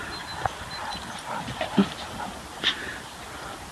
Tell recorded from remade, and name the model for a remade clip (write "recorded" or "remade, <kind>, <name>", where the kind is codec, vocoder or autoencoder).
recorded